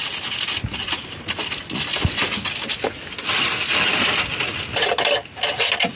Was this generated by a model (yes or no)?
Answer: no